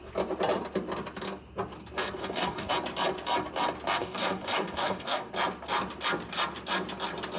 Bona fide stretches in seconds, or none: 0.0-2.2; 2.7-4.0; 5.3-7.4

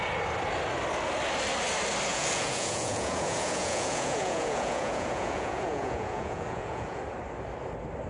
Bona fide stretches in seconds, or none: 0.0-2.1; 7.0-8.1